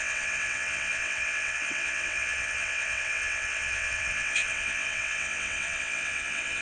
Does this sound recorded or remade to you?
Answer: remade